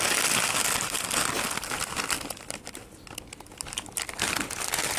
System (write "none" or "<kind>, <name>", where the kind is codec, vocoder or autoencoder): none